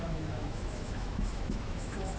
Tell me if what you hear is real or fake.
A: fake